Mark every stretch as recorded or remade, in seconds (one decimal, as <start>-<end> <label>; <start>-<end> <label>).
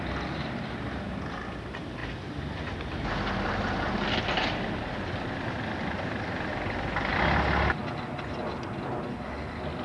0.0-9.8 recorded